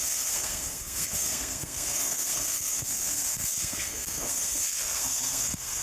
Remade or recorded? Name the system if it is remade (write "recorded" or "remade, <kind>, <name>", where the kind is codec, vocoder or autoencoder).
remade, codec, SNAC